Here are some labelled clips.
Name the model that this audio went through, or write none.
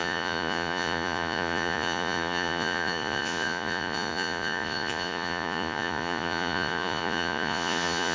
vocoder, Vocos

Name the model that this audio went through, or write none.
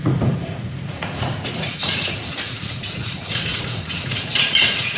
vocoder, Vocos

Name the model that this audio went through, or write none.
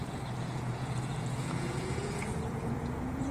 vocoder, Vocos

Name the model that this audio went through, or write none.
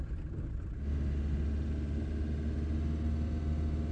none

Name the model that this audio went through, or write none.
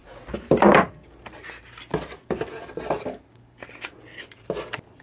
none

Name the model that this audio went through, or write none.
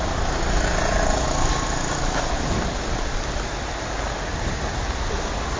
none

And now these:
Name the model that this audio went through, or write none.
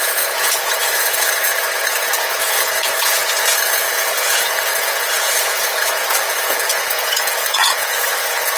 vocoder, Vocos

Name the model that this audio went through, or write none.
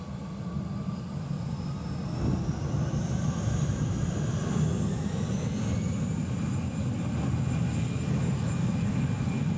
none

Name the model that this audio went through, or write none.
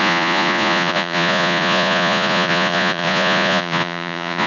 vocoder, Vocos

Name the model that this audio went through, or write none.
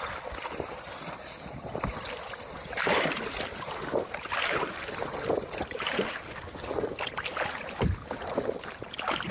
none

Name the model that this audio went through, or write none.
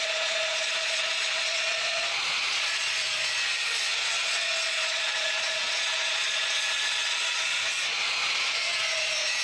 vocoder, Vocos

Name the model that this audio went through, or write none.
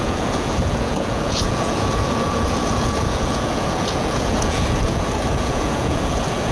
vocoder, Vocos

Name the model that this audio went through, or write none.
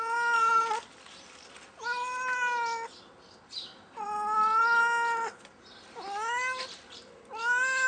none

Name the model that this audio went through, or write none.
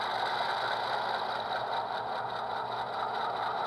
none